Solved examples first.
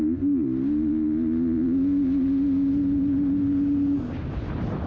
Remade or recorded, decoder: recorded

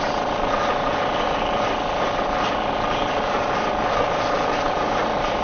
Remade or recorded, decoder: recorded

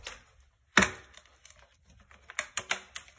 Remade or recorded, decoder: recorded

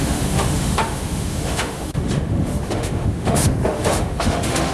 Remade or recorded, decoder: remade, autoencoder, DAC-VAE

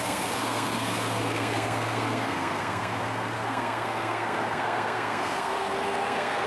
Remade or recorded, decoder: remade, codec, SNAC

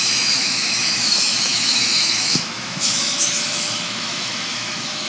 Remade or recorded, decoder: remade, autoencoder, DAC-VAE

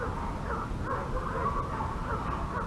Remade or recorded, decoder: recorded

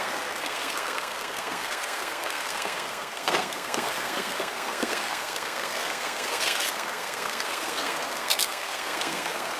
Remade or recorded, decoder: remade, codec, SNAC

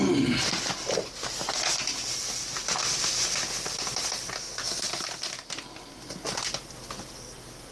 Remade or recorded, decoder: recorded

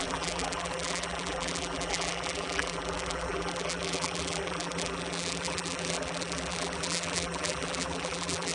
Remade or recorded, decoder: remade, vocoder, BigVGAN v2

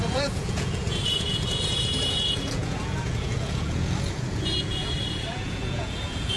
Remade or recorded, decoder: remade, vocoder, Vocos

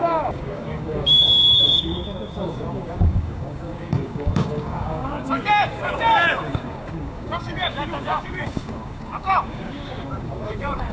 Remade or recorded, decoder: remade, codec, DAC